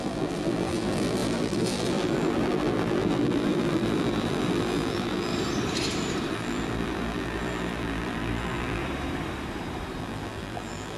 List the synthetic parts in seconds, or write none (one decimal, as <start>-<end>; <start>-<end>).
0.0-5.3; 6.3-8.8; 10.0-11.0